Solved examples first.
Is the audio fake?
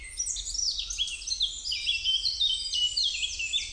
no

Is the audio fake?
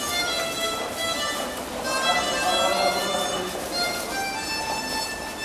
no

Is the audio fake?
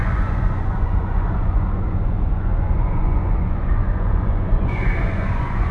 yes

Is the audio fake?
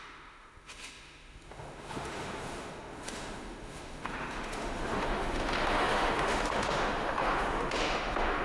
yes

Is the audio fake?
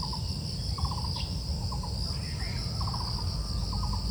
no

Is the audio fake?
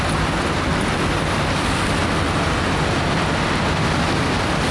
no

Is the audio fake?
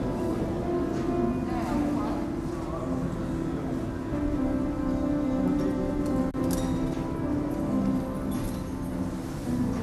no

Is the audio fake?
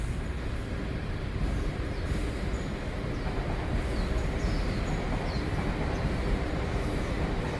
no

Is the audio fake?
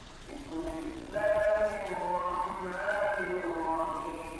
yes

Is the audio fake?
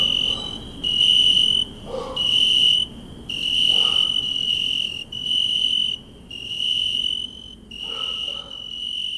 no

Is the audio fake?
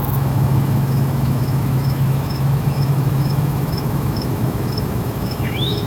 yes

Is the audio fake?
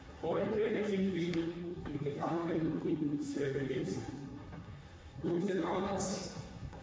yes